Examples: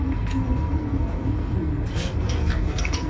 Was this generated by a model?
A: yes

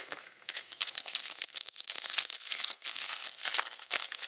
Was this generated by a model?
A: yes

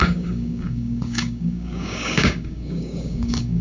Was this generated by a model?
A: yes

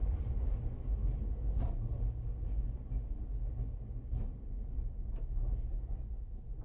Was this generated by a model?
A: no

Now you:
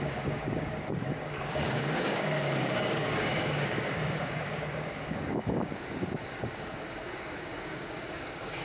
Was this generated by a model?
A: yes